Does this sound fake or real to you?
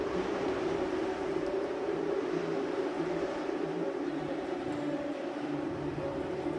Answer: fake